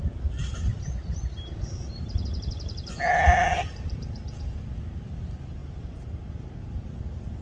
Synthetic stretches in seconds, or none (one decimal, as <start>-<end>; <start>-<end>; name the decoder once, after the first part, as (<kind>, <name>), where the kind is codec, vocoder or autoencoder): 0.7-2.2 (vocoder, BigVGAN v2); 5.6-6.3